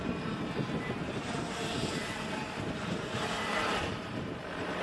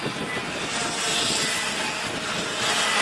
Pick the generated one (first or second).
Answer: first